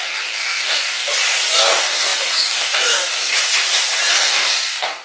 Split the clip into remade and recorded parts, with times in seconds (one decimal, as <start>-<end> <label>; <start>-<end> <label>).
0.0-1.1 remade; 1.1-1.6 recorded; 1.6-3.3 remade; 3.3-4.1 recorded; 4.1-5.0 remade